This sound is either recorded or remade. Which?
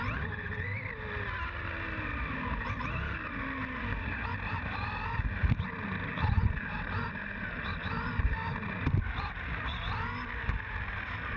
recorded